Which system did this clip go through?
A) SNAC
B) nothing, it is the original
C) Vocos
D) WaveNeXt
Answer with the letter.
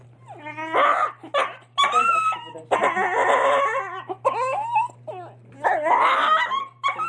B